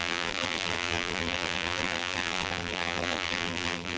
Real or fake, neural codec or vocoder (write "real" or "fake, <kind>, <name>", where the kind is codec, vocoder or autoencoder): fake, vocoder, BigVGAN v2